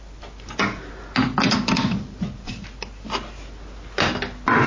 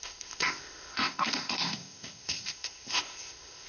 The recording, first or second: first